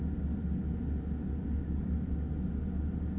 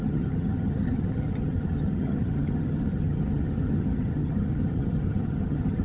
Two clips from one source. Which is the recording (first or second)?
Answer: first